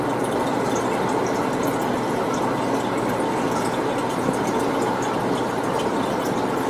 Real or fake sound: real